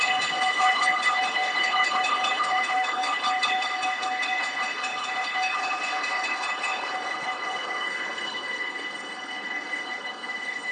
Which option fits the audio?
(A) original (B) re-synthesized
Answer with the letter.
B